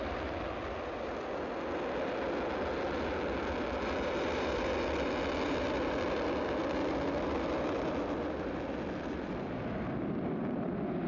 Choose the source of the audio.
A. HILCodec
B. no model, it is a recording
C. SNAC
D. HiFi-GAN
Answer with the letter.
B